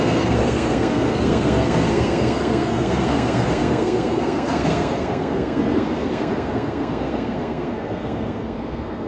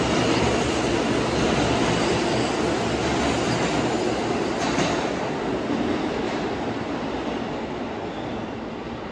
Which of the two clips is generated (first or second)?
first